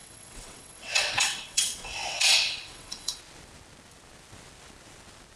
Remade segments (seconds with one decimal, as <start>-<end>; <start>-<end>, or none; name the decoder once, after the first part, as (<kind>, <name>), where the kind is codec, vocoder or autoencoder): 0.0-3.2 (vocoder, WaveNeXt)

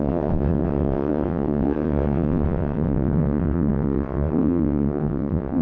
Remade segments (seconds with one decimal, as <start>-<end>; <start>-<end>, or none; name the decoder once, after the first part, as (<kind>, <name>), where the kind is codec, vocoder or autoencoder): 0.0-5.6 (vocoder, WaveNeXt)

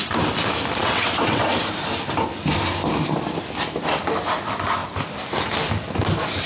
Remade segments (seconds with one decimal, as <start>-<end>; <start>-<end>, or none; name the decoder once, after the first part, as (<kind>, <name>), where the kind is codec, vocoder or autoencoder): 0.8-1.4 (vocoder, WaveNeXt)

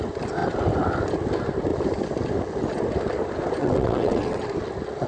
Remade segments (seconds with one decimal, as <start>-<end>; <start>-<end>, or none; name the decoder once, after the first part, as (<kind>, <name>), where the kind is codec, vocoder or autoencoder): 3.6-4.4 (vocoder, WaveNeXt)

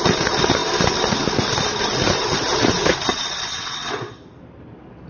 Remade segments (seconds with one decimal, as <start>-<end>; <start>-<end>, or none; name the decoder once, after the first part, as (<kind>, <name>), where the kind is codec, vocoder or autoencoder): 3.1-4.0 (vocoder, WaveNeXt)

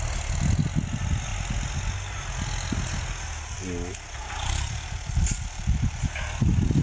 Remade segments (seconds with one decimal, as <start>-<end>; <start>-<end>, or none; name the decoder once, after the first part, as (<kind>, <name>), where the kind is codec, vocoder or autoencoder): none

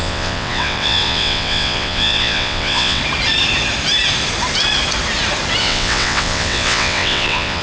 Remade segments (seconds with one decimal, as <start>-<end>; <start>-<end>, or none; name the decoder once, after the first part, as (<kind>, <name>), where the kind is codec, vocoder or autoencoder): 0.0-3.0 (vocoder, WaveNeXt); 5.6-7.6